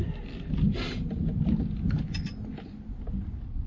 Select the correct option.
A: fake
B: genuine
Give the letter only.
B